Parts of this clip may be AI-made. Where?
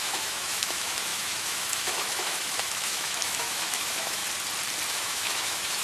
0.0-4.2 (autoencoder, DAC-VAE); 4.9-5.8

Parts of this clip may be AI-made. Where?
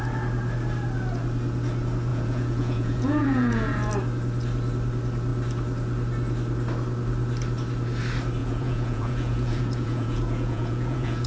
2.1-3.9 (vocoder, Vocos); 8.4-11.3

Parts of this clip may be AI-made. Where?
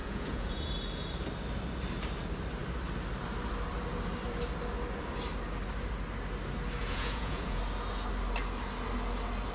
0.0-0.7 (vocoder, Vocos); 6.8-7.6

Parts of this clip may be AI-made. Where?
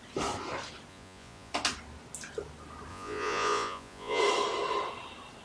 0.9-1.5 (vocoder, Vocos); 2.9-4.2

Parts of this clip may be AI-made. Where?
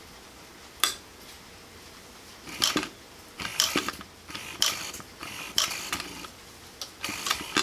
5.2-6.3 (vocoder, BigVGAN v2)